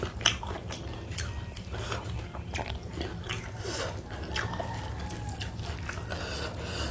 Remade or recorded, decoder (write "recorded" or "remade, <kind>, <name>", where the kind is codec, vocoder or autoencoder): recorded